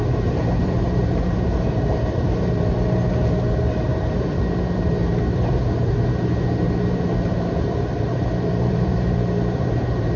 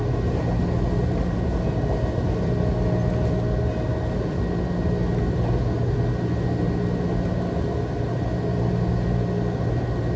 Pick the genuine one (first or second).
second